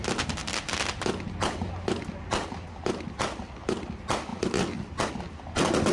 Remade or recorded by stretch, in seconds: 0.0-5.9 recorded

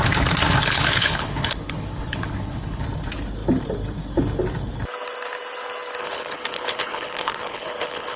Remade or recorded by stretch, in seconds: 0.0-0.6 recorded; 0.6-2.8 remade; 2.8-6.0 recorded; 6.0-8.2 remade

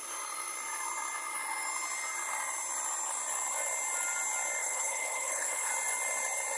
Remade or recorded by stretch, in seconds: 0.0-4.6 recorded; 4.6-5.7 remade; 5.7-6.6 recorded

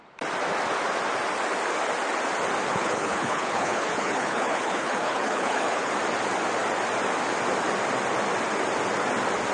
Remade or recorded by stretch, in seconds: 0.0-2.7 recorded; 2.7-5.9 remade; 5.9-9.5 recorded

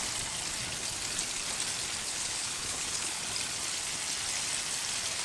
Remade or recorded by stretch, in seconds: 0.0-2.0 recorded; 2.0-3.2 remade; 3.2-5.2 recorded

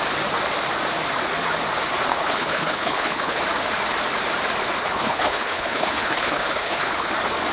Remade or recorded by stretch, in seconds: 0.0-2.1 recorded; 2.1-3.4 remade; 3.4-4.8 recorded; 4.8-7.1 remade; 7.1-7.5 recorded